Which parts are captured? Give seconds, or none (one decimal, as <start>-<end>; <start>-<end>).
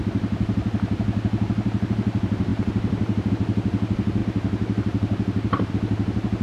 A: 0.0-2.5; 3.3-4.2; 5.7-6.4